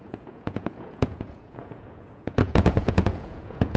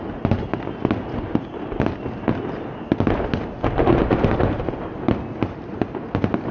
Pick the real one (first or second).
second